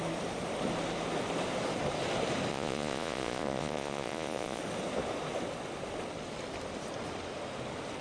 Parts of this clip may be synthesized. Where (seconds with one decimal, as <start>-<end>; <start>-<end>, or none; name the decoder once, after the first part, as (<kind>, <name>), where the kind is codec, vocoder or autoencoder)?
2.5-4.6 (vocoder, Vocos)